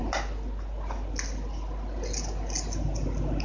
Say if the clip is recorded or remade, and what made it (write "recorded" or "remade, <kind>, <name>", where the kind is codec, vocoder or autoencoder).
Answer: recorded